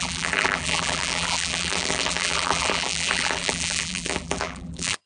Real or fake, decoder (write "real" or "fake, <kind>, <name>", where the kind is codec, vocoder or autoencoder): fake, vocoder, BigVGAN v2